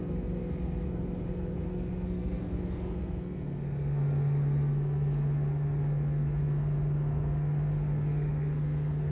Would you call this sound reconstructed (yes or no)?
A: yes